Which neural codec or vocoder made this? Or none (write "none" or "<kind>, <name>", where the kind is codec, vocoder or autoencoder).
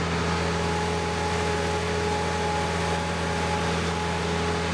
none